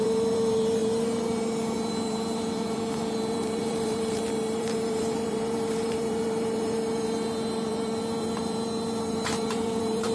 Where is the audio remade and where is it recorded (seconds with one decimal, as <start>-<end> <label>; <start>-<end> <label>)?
0.0-10.1 remade